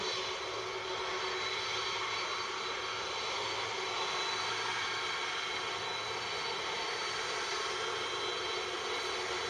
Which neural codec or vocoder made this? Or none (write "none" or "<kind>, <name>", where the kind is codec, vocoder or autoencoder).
none